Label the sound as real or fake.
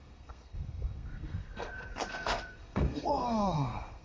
fake